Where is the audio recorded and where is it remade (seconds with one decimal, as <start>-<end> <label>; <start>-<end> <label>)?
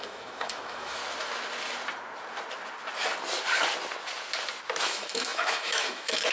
0.0-1.0 remade; 1.0-4.8 recorded; 4.8-6.3 remade